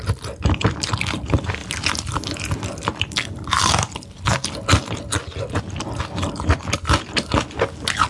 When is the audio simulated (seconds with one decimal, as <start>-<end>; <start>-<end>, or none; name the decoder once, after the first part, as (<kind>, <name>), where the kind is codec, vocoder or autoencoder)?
1.6-3.7 (vocoder, BigVGAN v2)